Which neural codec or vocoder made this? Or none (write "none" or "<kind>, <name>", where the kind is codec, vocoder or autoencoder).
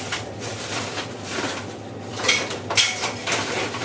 none